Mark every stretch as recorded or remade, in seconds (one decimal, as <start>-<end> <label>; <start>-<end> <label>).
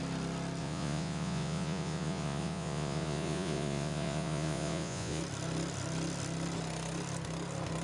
0.0-0.6 recorded; 0.6-5.2 remade; 5.2-7.8 recorded